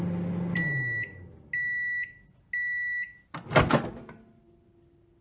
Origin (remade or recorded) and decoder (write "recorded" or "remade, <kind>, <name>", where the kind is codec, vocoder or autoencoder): recorded